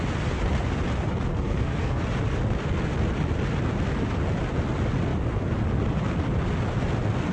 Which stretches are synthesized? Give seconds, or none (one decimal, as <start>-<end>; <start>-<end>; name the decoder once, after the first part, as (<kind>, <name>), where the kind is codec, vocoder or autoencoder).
1.3-2.0 (codec, SNAC)